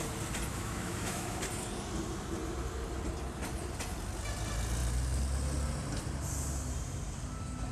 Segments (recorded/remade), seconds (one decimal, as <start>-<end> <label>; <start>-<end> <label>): 0.0-0.5 recorded; 0.5-1.4 remade; 1.4-7.7 recorded